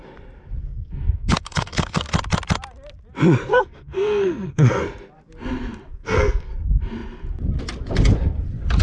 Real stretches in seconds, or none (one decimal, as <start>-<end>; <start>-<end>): 0.0-0.6; 2.1-3.5; 4.8-5.9; 6.5-8.8